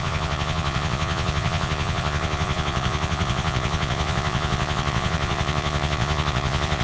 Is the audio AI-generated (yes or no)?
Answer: yes